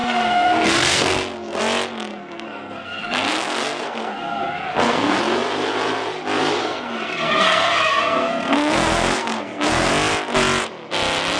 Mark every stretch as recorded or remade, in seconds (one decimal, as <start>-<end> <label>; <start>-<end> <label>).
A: 0.0-1.6 remade; 1.6-2.1 recorded; 2.1-5.2 remade; 5.2-6.6 recorded; 6.6-9.9 remade; 9.9-11.4 recorded